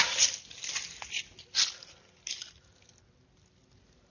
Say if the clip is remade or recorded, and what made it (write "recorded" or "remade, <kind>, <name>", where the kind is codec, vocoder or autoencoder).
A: recorded